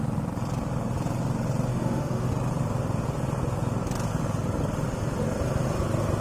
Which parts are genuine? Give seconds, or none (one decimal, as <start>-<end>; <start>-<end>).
0.0-1.7; 2.3-6.2

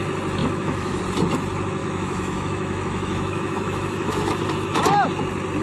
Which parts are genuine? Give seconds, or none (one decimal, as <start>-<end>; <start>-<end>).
0.0-0.4; 1.0-1.8; 4.8-5.6

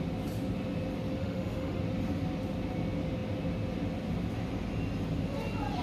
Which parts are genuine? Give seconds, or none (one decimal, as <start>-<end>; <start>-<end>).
0.0-1.2; 1.8-5.8

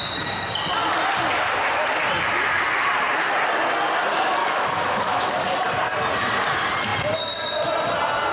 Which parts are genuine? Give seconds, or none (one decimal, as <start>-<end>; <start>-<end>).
0.0-4.4; 5.3-8.3

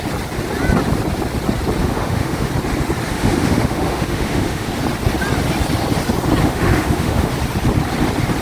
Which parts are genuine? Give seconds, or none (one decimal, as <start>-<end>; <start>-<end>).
0.0-1.8; 2.5-3.1; 4.7-6.4; 7.3-8.4